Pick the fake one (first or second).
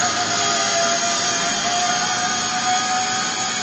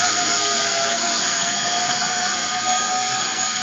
second